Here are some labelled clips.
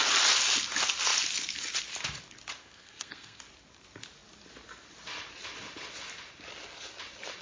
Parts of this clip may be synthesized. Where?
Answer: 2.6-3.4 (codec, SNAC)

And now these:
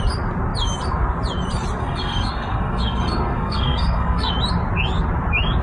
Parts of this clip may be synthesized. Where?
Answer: 1.8-4.3 (codec, SNAC)

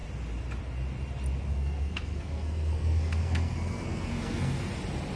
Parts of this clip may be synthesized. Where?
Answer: 1.5-4.6 (codec, SNAC)

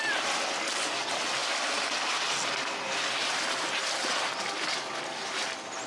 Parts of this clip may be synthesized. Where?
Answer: none

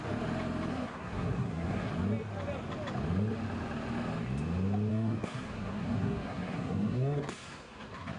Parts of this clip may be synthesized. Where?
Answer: 0.7-1.9 (codec, SNAC); 4.9-8.2

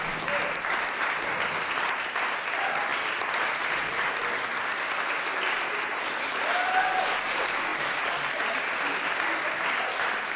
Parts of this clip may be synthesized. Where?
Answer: none

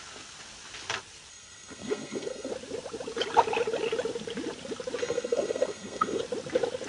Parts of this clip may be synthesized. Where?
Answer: 1.3-2.5 (codec, SNAC); 5.0-6.2

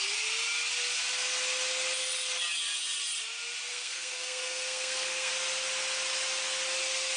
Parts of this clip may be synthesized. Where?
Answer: 3.7-5.3 (codec, SNAC)